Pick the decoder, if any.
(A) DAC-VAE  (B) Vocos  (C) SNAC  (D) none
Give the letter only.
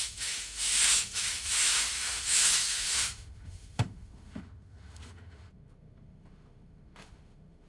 A